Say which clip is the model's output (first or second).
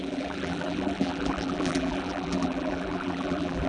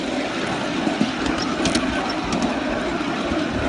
first